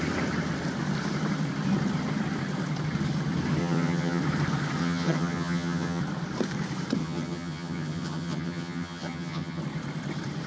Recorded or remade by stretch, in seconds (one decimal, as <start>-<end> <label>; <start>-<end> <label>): 0.0-3.6 recorded; 3.6-4.2 remade; 4.2-4.8 recorded; 4.8-6.0 remade; 6.0-7.0 recorded; 7.0-9.6 remade; 9.6-10.5 recorded